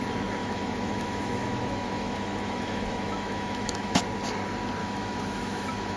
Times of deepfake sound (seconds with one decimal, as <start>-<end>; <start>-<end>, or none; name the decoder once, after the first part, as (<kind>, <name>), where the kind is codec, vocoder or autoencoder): 0.4-4.0 (autoencoder, DAC-VAE); 4.8-6.0